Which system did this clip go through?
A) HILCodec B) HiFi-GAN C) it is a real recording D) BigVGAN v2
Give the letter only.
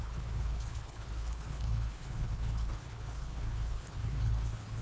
A